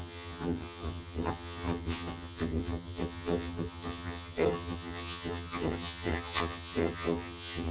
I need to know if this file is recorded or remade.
remade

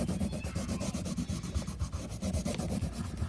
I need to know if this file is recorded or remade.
recorded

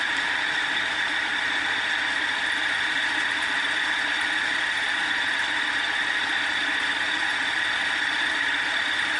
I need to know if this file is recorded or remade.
recorded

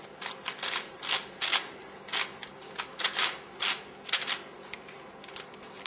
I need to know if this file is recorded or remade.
recorded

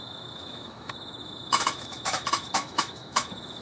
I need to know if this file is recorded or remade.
remade